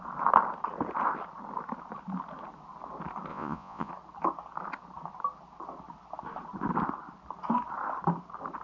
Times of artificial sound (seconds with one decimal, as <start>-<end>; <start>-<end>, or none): 3.3-3.9